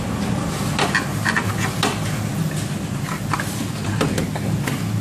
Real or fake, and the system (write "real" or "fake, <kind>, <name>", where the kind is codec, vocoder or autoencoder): real